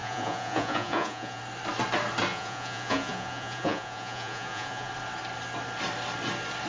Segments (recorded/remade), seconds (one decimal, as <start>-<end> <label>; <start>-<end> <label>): 0.0-1.4 remade; 1.4-2.3 recorded; 2.3-4.9 remade; 4.9-6.7 recorded